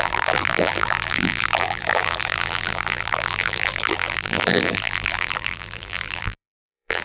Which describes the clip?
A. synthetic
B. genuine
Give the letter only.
A